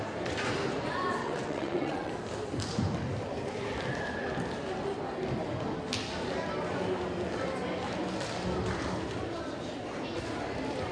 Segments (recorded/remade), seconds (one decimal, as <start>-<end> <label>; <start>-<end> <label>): 0.0-1.2 recorded; 1.2-2.1 remade; 2.1-10.9 recorded